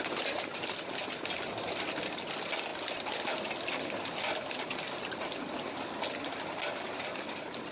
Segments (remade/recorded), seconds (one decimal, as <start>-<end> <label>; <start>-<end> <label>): 0.0-7.7 recorded